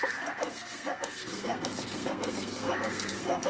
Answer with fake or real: fake